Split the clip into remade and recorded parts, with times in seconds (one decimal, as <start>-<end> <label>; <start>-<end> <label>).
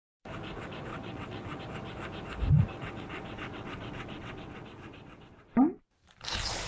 0.0-0.9 recorded; 0.9-1.6 remade; 1.6-2.7 recorded; 2.7-5.4 remade; 5.4-6.7 recorded